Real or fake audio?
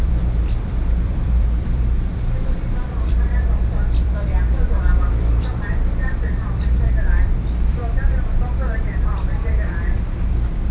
fake